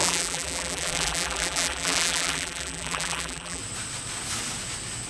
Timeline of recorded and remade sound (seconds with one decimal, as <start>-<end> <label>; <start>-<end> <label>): 0.0-3.6 remade; 3.6-5.1 recorded